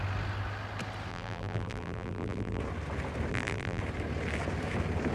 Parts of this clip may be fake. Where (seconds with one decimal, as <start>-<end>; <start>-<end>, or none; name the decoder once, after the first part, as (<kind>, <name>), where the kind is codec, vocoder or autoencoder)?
1.1-2.6 (vocoder, BigVGAN v2); 3.3-3.8